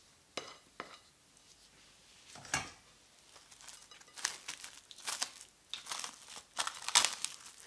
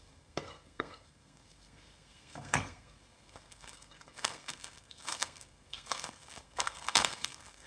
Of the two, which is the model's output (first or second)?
second